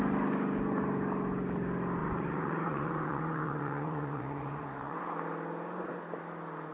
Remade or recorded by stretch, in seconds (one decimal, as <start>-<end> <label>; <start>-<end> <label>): 0.0-2.0 recorded; 2.0-5.0 remade; 5.0-6.7 recorded